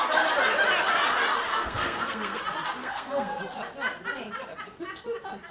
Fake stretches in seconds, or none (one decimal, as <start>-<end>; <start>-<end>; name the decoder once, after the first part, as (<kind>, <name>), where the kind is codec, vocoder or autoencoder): 1.5-2.4 (codec, SNAC); 2.8-3.4